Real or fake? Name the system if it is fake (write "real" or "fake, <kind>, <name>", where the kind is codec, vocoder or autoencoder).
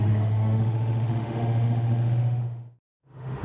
fake, autoencoder, DAC-VAE